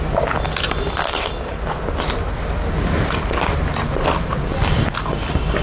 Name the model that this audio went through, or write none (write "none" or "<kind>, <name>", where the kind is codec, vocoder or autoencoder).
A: none